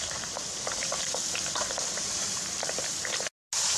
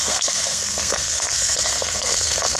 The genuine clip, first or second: first